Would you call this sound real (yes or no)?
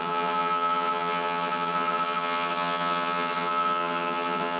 no